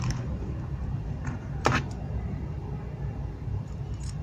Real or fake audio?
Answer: fake